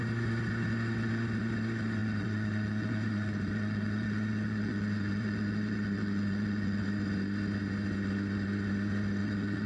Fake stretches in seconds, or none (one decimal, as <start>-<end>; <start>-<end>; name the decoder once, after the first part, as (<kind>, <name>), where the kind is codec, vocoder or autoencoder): 2.0-6.8 (vocoder, Vocos); 9.2-9.7